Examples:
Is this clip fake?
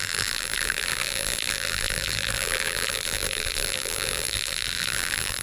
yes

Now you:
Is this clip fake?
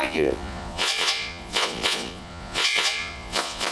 yes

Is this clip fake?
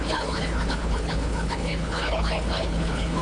yes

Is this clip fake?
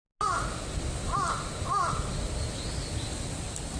no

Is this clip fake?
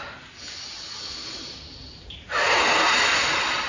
no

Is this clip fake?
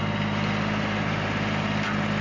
no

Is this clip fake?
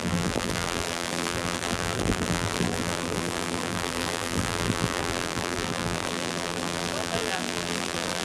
yes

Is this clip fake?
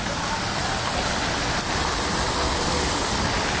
no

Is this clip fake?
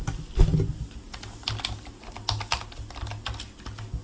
no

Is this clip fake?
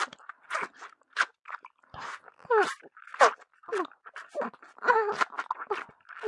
no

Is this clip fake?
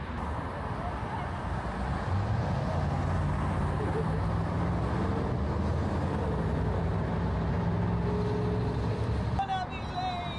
no